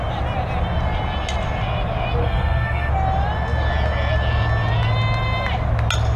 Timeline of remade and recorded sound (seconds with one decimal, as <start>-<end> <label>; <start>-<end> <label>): 0.0-2.2 recorded; 2.2-2.9 remade; 2.9-6.2 recorded